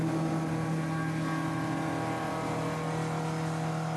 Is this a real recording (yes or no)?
yes